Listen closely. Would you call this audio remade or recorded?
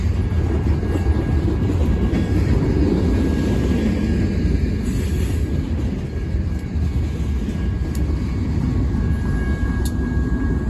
recorded